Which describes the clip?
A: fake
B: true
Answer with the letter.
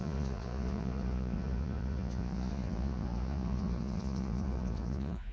A